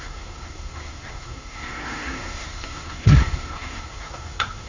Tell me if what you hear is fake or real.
fake